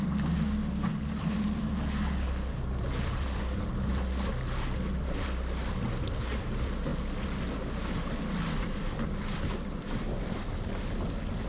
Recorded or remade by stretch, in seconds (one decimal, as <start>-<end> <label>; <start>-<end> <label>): 0.0-0.9 recorded; 0.9-1.7 remade; 1.7-11.5 recorded